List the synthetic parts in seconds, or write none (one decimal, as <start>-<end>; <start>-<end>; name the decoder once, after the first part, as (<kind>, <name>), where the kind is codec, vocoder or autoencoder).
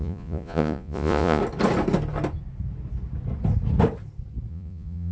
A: 0.0-1.4 (vocoder, Vocos); 4.5-5.1